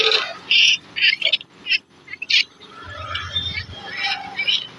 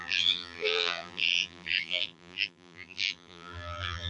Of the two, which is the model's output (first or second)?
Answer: second